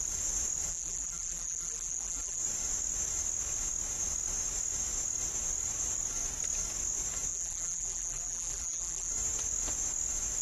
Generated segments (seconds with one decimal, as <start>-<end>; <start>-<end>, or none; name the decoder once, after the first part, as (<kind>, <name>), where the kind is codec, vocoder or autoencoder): 0.7-2.4 (vocoder, BigVGAN v2); 7.3-9.1

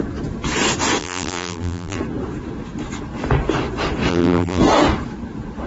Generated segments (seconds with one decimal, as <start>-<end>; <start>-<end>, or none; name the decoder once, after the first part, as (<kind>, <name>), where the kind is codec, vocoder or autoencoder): 1.0-2.0 (vocoder, BigVGAN v2); 4.1-4.6

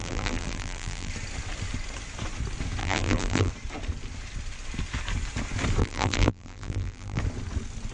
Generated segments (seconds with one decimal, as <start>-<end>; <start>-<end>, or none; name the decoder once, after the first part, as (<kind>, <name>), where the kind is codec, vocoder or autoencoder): 0.0-1.1 (vocoder, BigVGAN v2); 2.8-3.5; 5.8-7.2